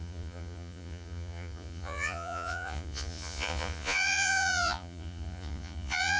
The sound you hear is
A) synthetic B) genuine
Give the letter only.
A